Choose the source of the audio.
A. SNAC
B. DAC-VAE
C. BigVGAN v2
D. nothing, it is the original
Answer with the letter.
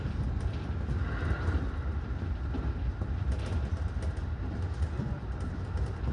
C